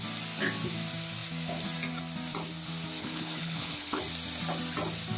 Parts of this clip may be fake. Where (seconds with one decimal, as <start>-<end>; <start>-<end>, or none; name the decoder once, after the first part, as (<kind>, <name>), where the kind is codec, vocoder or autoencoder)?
3.0-4.0 (codec, HILCodec)